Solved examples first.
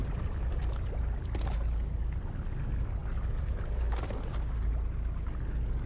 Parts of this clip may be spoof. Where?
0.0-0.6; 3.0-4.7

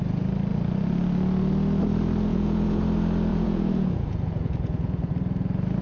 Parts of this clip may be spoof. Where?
2.3-2.8; 3.3-5.1